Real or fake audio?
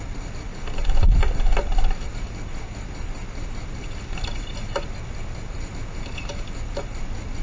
real